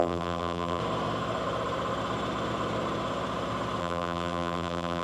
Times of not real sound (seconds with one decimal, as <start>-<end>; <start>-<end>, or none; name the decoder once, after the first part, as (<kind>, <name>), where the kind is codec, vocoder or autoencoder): 0.0-0.8 (vocoder, BigVGAN v2); 3.8-5.0